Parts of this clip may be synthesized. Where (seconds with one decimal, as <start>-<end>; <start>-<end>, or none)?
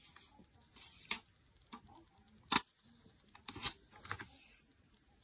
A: none